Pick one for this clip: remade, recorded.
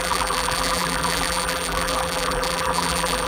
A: remade